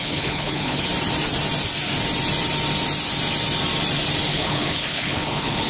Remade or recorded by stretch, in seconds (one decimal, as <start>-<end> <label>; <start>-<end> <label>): 0.0-0.9 remade; 0.9-4.3 recorded; 4.3-5.7 remade